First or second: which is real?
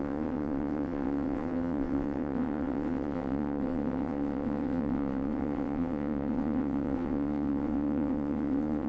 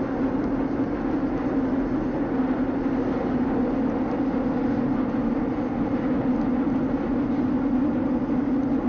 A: second